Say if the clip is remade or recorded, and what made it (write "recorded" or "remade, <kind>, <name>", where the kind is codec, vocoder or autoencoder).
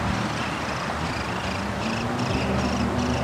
recorded